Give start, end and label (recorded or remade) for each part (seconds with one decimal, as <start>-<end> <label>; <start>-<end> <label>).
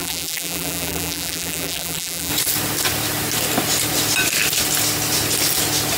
0.0-2.3 remade; 2.3-6.0 recorded